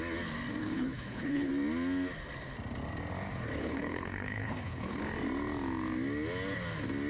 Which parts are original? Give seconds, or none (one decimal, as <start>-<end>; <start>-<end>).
0.0-0.6; 1.5-3.6; 5.0-7.1